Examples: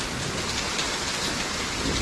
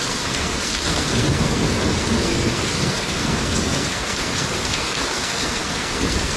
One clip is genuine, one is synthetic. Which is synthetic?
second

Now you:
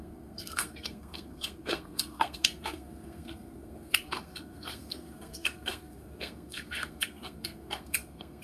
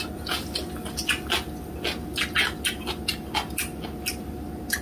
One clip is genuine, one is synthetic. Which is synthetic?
first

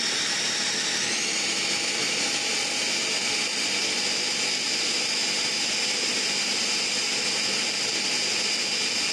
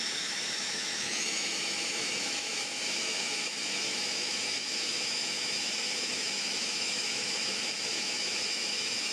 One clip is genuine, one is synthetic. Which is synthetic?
second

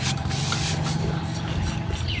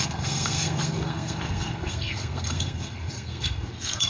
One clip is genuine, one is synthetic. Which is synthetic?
second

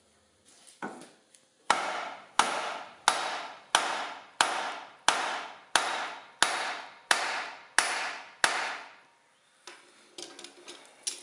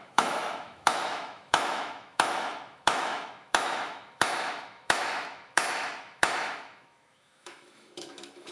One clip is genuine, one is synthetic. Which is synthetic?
second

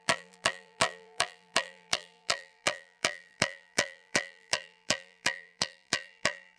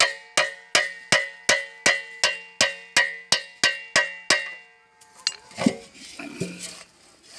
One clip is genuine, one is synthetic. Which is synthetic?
first